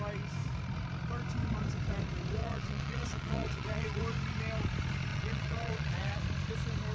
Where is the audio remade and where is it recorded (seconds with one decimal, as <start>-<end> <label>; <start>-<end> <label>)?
0.0-2.4 recorded; 2.4-4.0 remade; 4.0-5.1 recorded; 5.1-6.2 remade; 6.2-6.9 recorded

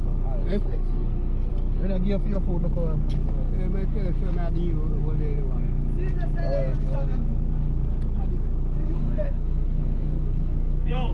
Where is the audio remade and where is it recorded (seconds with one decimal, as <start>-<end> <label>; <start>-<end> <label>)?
0.0-0.7 recorded; 0.7-1.5 remade; 1.5-9.0 recorded; 9.0-11.1 remade

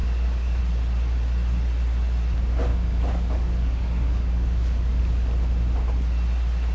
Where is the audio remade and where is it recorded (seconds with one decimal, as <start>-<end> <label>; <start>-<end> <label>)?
0.0-0.6 remade; 0.6-2.7 recorded; 2.7-5.0 remade; 5.0-6.7 recorded

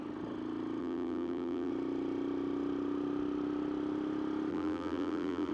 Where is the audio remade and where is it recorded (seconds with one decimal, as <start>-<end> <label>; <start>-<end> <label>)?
0.0-0.8 recorded; 0.8-1.7 remade; 1.7-4.5 recorded; 4.5-5.5 remade